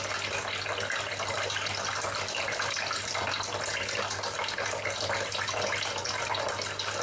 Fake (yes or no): no